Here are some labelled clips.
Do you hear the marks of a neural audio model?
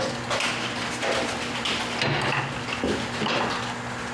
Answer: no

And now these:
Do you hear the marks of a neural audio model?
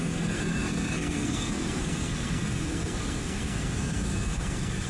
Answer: yes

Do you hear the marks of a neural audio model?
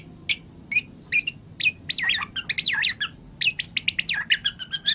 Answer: no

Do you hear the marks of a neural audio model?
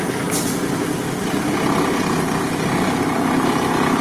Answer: no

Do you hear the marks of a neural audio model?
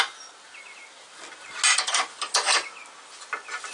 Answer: no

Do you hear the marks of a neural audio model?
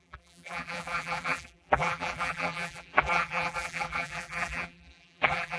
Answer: yes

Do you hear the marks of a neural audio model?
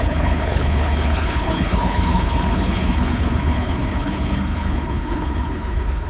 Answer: yes